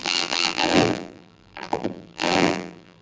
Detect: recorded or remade remade